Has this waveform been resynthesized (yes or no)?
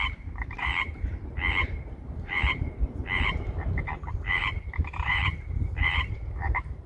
yes